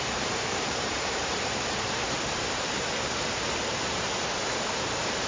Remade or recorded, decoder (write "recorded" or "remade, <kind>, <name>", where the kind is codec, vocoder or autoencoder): remade, vocoder, BigVGAN v2